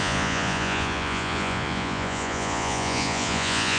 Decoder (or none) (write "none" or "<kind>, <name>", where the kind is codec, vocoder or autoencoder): vocoder, Vocos